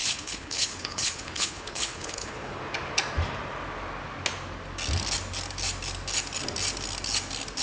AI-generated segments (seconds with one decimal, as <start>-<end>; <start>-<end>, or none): 0.0-2.6